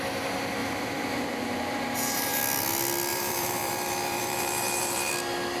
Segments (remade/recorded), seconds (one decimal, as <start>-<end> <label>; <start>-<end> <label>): 0.0-0.6 recorded; 0.6-2.4 remade; 2.4-3.1 recorded; 3.1-5.1 remade; 5.1-5.6 recorded